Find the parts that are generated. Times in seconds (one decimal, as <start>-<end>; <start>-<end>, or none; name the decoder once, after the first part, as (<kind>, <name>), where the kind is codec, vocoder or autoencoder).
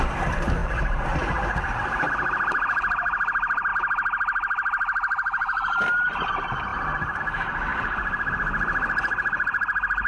3.7-6.3 (vocoder, BigVGAN v2); 6.7-7.2; 7.7-8.3